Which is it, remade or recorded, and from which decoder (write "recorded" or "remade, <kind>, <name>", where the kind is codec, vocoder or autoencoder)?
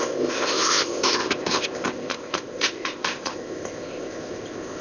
remade, codec, ZipCodec